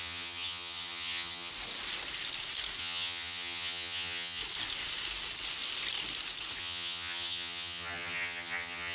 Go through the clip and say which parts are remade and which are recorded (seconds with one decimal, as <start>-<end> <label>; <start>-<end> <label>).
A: 0.0-1.5 remade; 1.5-2.8 recorded; 2.8-4.4 remade; 4.4-6.6 recorded; 6.6-8.9 remade